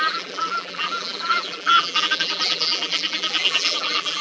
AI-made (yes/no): yes